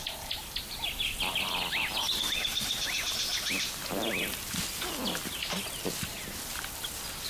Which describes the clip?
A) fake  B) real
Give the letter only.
B